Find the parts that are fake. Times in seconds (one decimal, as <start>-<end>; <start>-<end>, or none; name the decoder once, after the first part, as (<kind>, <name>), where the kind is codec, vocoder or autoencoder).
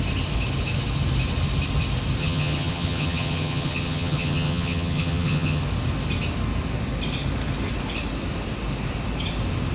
2.2-5.6 (vocoder, HiFi-GAN)